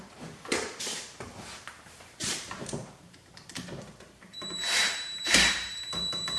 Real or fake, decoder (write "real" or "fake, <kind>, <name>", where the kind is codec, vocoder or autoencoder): fake, vocoder, BigVGAN v2